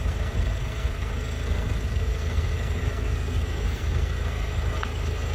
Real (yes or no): no